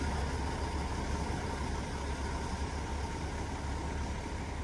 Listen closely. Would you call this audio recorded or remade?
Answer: recorded